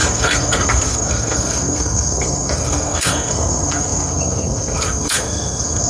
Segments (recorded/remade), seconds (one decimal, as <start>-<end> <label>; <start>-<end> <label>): 0.0-5.9 remade